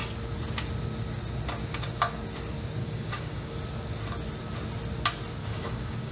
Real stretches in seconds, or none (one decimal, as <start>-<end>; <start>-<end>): 0.0-2.8; 3.5-5.4